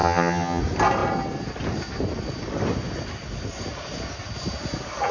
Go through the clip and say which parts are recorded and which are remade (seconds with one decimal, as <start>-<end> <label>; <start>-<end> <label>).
0.0-0.6 remade; 0.6-5.1 recorded